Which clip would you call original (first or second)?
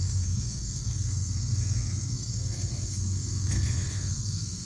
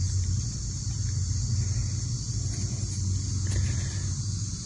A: second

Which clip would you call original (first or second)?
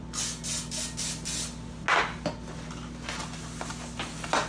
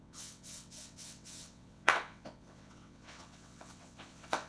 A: first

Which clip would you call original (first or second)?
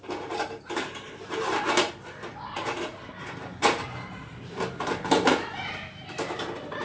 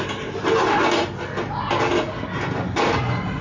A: second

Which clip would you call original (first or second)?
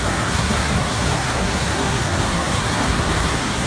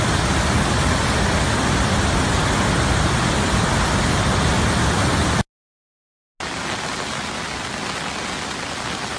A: second